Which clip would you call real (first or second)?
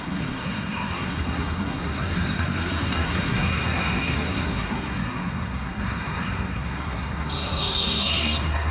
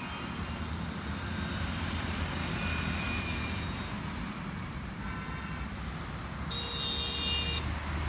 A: second